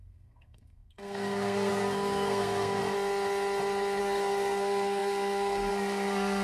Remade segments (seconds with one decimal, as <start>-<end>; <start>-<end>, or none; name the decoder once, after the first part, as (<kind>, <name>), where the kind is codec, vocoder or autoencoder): 0.0-2.8 (codec, SNAC); 4.0-6.4